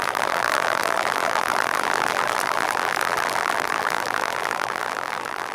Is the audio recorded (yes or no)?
no